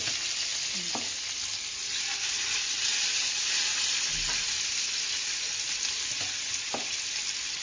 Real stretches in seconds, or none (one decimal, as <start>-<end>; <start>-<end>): 0.0-7.6